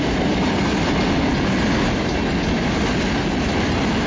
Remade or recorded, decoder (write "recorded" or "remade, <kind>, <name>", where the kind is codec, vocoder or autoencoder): recorded